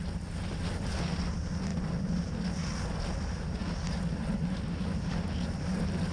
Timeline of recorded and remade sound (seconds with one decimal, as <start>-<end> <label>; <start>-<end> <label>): 0.0-6.1 recorded